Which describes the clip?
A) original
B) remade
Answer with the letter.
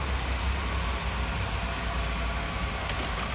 A